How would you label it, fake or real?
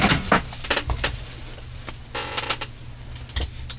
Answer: real